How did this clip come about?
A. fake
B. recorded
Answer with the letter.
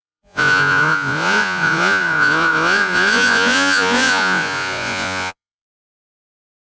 A